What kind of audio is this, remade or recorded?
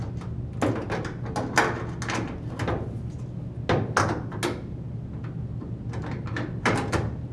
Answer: recorded